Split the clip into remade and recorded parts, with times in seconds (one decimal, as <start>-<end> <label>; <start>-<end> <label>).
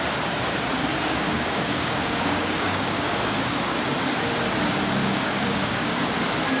0.0-0.9 recorded; 0.9-3.8 remade; 3.8-5.0 recorded; 5.0-6.1 remade; 6.1-6.6 recorded